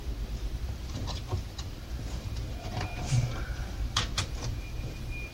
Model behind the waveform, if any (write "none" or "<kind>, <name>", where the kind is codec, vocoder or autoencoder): vocoder, BigVGAN v2